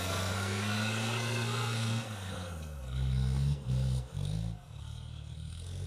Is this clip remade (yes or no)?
yes